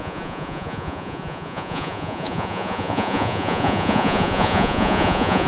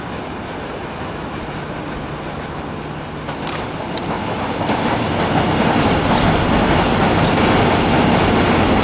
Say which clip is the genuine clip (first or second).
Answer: second